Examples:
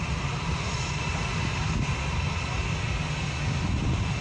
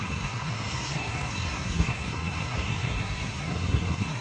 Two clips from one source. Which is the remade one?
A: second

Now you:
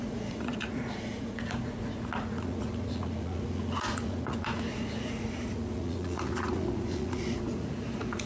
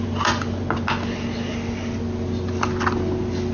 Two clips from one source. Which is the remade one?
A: first